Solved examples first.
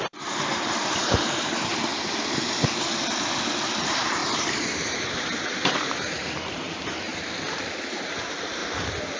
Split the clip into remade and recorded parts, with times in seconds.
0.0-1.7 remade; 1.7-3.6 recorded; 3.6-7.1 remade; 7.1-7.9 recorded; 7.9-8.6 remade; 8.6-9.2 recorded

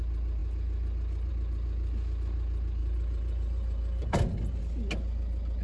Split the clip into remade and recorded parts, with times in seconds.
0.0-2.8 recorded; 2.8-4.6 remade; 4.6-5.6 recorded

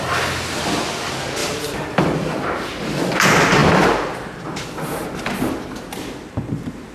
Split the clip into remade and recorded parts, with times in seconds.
0.0-6.9 recorded

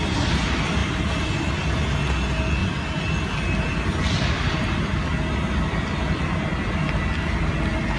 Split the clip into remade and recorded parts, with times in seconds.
0.0-0.8 recorded; 0.8-1.4 remade; 1.4-2.6 recorded; 2.6-7.4 remade; 7.4-8.0 recorded